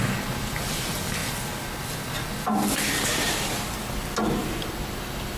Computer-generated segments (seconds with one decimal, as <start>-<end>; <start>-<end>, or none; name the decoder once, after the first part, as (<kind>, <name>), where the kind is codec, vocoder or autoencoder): none